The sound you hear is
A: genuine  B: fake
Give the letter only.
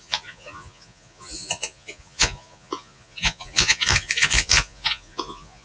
B